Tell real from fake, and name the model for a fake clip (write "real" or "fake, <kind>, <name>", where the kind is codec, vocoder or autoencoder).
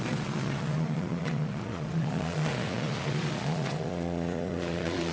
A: fake, vocoder, Vocos